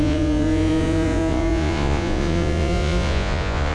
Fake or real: fake